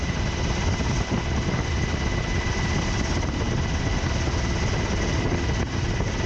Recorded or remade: recorded